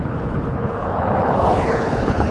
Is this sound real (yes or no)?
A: no